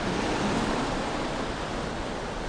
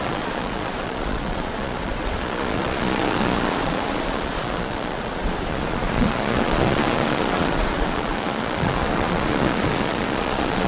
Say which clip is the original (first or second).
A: first